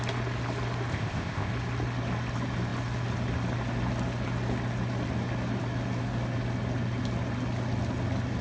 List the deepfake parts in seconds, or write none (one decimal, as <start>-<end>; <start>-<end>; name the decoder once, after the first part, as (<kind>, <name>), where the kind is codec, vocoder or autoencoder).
0.9-1.5 (codec, ZipCodec)